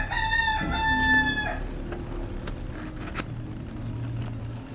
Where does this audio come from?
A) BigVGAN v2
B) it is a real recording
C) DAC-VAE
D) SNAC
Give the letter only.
B